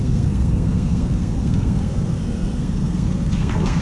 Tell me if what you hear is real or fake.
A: fake